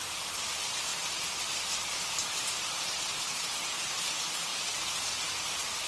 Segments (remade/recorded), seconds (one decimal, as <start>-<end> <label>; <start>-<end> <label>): 0.0-5.9 recorded